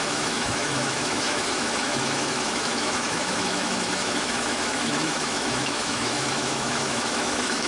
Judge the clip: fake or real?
fake